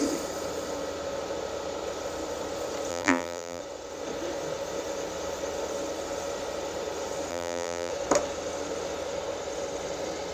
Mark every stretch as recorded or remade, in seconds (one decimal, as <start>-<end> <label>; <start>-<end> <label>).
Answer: 0.0-2.9 recorded; 2.9-3.6 remade; 3.6-7.3 recorded; 7.3-7.9 remade; 7.9-10.3 recorded